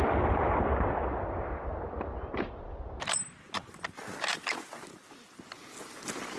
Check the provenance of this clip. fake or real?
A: real